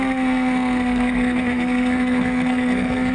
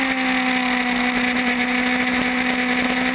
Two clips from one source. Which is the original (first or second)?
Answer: second